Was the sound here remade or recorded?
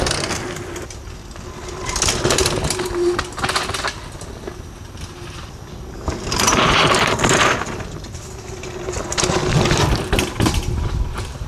recorded